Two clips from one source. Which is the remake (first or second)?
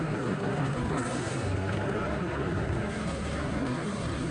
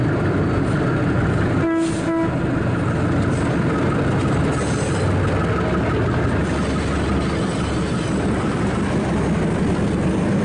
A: first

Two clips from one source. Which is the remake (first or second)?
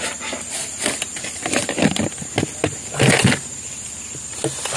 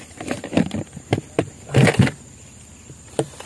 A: second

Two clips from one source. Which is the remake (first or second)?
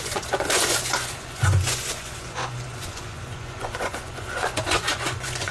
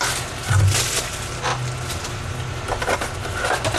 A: first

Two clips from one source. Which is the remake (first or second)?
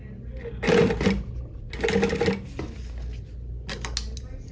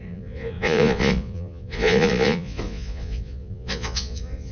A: second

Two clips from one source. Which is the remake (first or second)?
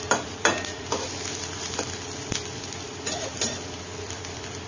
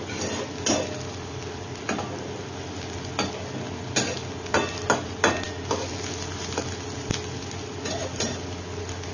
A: first